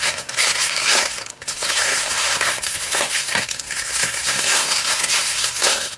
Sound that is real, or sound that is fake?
fake